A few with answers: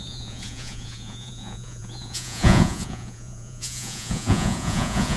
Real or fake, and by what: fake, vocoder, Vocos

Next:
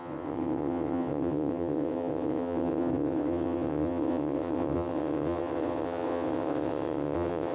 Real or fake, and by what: fake, vocoder, WaveNeXt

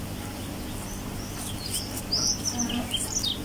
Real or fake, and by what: real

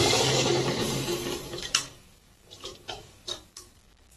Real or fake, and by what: fake, codec, DAC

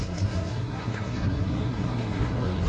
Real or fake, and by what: fake, codec, SNAC